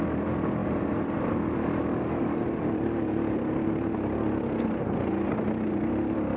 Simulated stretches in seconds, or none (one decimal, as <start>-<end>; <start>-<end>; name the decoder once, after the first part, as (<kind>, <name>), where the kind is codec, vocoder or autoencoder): none